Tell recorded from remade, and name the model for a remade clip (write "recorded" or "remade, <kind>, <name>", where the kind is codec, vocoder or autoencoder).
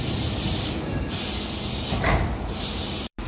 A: recorded